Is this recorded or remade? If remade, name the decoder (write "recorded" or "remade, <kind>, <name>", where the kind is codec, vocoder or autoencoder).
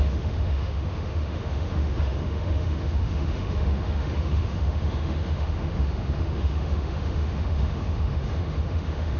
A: remade, autoencoder, DAC-VAE